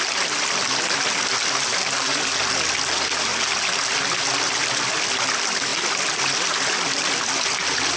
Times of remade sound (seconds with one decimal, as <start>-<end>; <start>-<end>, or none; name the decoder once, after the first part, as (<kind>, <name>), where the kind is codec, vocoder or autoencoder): none